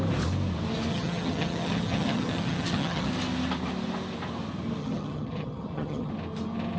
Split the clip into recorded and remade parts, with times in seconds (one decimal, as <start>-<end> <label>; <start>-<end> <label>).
0.0-0.9 recorded; 0.9-3.1 remade; 3.1-4.8 recorded; 4.8-6.1 remade; 6.1-6.8 recorded